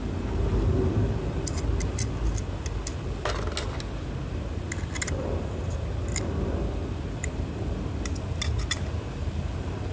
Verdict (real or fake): real